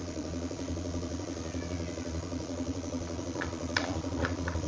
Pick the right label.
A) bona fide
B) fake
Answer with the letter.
B